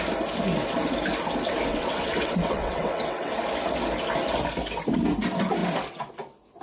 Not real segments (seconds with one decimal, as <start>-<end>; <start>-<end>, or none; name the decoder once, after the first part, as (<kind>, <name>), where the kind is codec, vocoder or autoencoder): 1.7-3.3 (vocoder, WaveNeXt)